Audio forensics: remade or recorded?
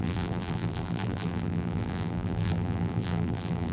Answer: remade